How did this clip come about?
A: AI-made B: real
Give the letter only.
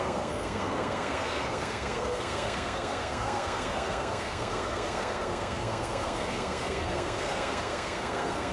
A